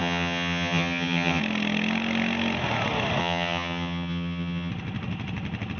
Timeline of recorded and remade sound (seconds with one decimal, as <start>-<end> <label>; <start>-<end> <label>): 0.0-1.4 remade; 1.4-3.2 recorded; 3.2-4.7 remade; 4.7-5.8 recorded